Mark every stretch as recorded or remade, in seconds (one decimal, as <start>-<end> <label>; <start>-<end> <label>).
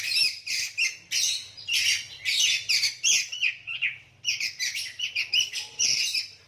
0.0-6.5 recorded